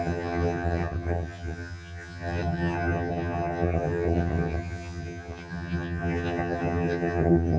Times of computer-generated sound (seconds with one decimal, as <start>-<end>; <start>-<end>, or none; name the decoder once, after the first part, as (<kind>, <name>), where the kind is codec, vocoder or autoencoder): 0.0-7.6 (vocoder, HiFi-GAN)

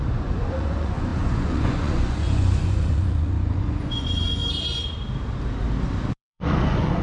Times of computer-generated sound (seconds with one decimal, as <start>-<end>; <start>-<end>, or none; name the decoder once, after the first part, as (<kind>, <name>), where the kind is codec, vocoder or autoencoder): 0.0-4.4 (vocoder, Vocos); 6.1-7.0

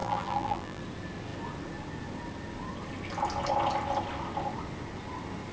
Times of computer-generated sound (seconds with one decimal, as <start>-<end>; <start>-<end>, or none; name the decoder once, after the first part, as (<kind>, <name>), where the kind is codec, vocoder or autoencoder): 0.0-0.8 (vocoder, BigVGAN v2)

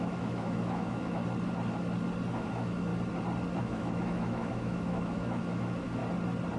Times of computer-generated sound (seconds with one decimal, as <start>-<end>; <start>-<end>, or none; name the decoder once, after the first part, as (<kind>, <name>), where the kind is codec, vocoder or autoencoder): 0.0-1.2 (autoencoder, DAC-VAE); 2.3-2.9; 3.6-6.0

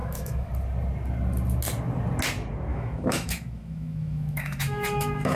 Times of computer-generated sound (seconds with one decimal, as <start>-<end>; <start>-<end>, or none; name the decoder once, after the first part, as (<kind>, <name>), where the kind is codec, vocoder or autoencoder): 0.0-0.5 (autoencoder, DAC-VAE); 2.7-5.4

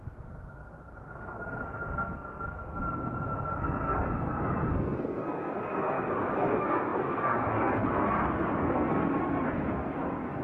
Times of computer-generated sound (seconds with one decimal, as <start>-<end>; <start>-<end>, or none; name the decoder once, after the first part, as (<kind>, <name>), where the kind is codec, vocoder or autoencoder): 0.0-2.8 (codec, SNAC); 3.5-10.4

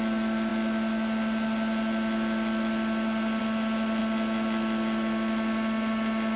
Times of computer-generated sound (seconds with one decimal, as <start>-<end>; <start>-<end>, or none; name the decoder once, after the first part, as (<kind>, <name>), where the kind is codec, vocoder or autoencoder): none

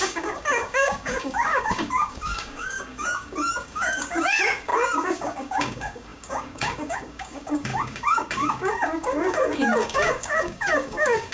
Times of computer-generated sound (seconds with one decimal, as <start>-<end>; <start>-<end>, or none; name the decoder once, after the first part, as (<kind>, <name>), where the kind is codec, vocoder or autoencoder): 0.0-11.3 (codec, DAC)